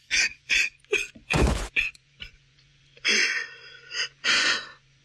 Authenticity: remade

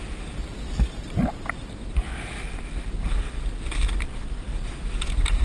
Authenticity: recorded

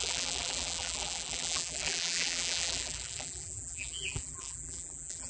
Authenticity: remade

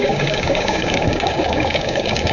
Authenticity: remade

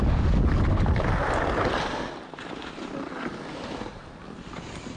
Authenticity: recorded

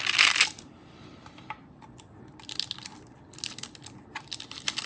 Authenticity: recorded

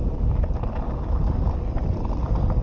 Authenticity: recorded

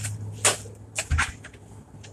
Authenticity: recorded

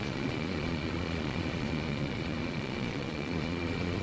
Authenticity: remade